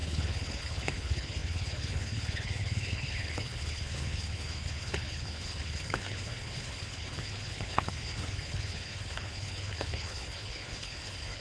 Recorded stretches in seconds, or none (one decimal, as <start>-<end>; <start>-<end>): none

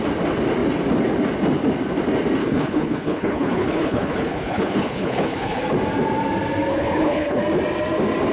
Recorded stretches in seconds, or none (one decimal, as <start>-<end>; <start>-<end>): 0.0-2.4; 5.6-6.7; 7.4-8.3

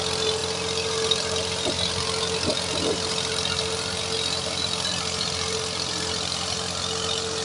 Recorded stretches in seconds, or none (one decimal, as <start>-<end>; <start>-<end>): 0.0-7.4

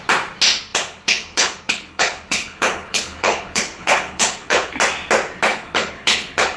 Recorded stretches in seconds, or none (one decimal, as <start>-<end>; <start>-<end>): 0.0-0.7; 4.7-5.5

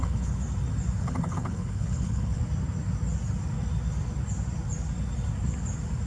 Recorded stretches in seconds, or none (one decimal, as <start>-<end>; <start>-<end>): 0.4-1.0; 2.4-6.1